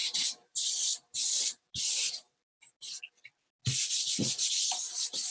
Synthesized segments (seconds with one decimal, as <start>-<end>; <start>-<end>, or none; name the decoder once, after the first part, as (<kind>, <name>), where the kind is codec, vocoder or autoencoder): 0.0-3.0 (vocoder, BigVGAN v2)